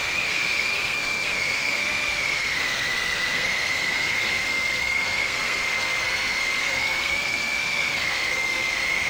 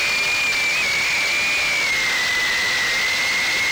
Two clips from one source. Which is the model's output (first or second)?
first